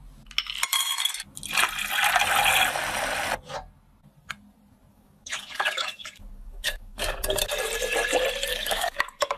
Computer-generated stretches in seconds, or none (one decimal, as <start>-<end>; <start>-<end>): 4.9-7.2; 8.5-9.4